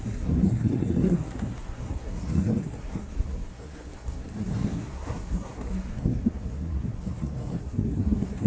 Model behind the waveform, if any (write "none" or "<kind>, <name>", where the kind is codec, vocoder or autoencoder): codec, SNAC